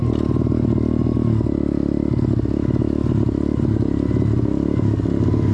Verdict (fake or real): real